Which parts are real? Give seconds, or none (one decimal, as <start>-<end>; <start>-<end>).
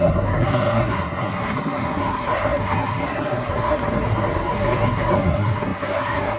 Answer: none